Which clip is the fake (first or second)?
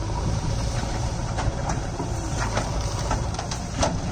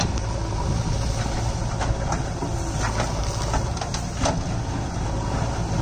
first